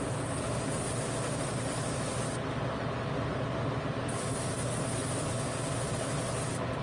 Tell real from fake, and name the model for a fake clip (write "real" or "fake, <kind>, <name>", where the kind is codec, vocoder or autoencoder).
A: real